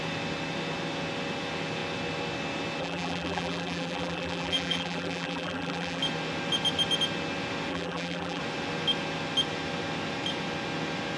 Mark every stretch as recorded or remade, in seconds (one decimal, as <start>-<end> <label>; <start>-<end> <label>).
0.0-2.8 recorded; 2.8-6.0 remade; 6.0-7.7 recorded; 7.7-8.4 remade; 8.4-11.2 recorded